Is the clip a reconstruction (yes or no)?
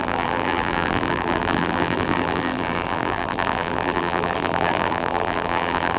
yes